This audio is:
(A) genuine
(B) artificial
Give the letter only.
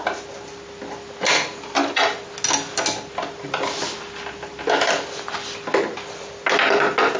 A